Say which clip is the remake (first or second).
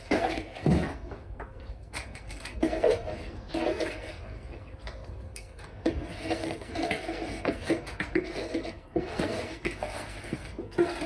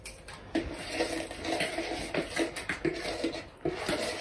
first